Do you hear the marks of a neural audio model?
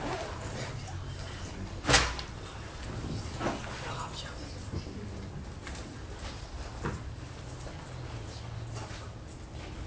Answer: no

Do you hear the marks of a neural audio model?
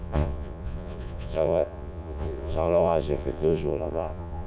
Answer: yes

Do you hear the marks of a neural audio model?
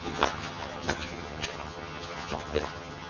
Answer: yes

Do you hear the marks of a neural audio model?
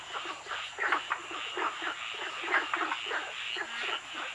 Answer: no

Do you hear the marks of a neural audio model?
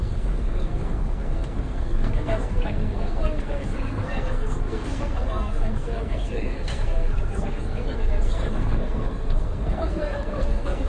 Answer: yes